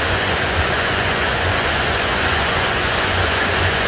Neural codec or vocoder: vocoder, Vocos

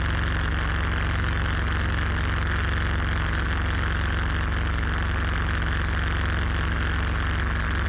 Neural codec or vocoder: none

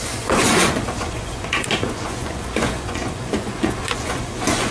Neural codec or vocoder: vocoder, Vocos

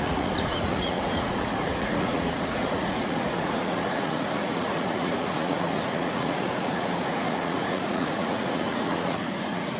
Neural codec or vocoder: vocoder, Vocos